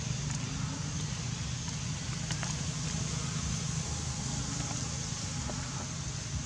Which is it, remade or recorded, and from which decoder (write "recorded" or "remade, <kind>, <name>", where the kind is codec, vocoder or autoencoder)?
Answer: recorded